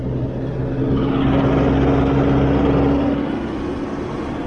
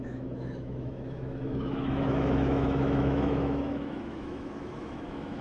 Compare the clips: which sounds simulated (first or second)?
second